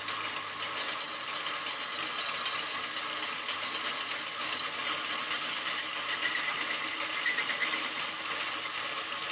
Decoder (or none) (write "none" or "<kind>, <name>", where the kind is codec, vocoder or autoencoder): none